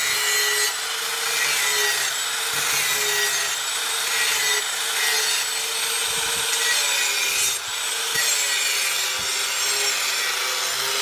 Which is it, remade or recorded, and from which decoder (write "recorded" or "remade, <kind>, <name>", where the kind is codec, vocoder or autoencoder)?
recorded